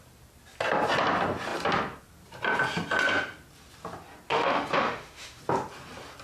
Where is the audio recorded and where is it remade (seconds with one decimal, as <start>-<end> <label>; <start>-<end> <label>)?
0.0-4.3 recorded; 4.3-5.4 remade; 5.4-6.2 recorded